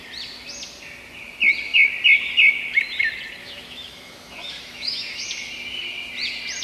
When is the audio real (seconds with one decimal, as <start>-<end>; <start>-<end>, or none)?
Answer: 0.0-3.4; 5.3-6.6